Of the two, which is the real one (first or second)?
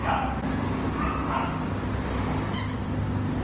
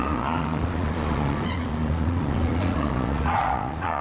first